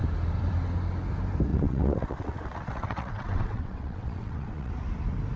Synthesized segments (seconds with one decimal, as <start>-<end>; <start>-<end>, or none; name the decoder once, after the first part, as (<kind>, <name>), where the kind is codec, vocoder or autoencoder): 1.5-4.7 (vocoder, WaveNeXt)